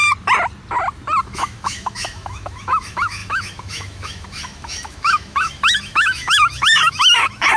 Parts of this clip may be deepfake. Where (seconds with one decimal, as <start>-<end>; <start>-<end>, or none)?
1.2-7.6